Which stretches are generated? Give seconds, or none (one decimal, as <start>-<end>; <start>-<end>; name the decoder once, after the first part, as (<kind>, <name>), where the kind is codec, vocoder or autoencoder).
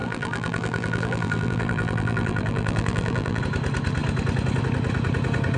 0.0-3.4 (vocoder, BigVGAN v2)